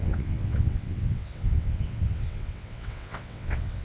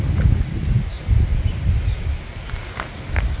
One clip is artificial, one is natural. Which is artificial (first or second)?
first